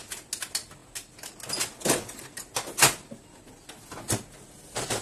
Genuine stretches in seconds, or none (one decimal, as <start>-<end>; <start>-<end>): 0.0-5.0